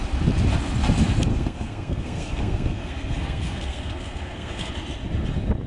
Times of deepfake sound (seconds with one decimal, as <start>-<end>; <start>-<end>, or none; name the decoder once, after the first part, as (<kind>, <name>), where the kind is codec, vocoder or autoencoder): 1.3-4.7 (codec, SNAC)